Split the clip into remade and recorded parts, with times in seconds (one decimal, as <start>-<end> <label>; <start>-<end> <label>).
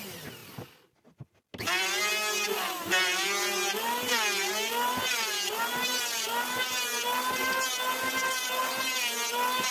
0.0-9.7 recorded